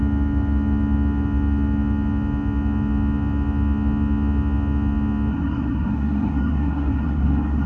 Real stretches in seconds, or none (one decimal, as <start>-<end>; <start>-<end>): 0.0-5.3